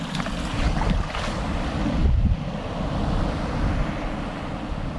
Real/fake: real